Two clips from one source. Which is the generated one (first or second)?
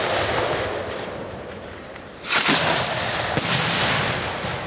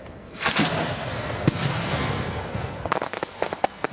second